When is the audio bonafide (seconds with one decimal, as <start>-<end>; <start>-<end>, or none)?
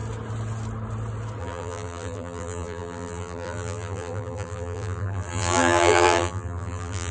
0.0-1.4